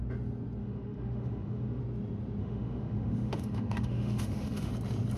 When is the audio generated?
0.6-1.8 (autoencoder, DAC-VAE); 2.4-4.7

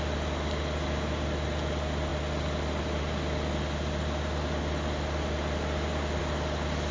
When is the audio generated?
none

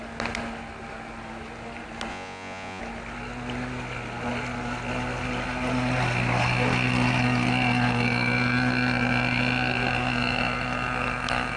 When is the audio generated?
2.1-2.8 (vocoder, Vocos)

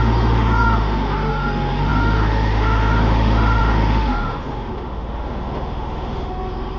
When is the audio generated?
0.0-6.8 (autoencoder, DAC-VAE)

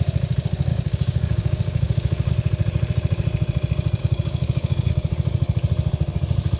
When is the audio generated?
0.7-2.3 (codec, DAC); 4.0-4.9

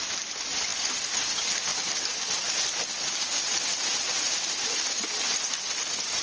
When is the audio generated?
none

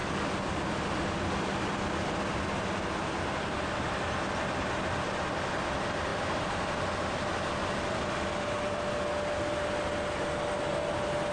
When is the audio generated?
0.0-0.7 (codec, DAC)